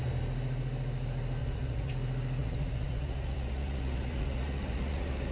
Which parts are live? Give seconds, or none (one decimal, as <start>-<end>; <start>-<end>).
0.0-1.4; 1.9-2.4